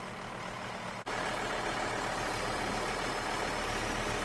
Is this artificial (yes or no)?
no